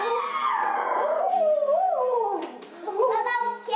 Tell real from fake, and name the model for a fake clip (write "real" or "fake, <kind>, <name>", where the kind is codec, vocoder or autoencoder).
real